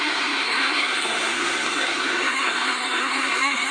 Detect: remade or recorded remade